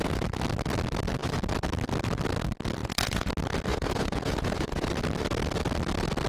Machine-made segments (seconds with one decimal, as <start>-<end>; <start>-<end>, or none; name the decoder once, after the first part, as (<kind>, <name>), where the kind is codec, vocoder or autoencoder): 2.8-3.3 (vocoder, Vocos); 3.7-4.9